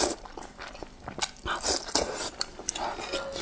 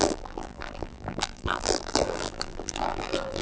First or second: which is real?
first